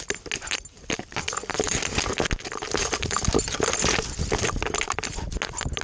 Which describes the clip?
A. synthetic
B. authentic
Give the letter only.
B